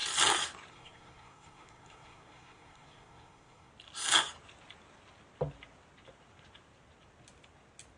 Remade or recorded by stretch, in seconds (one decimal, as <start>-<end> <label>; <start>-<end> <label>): 0.0-0.7 recorded; 0.7-3.7 remade; 3.7-8.0 recorded